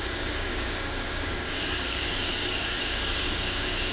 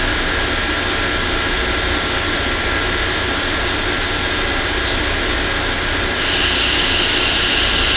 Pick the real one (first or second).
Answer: second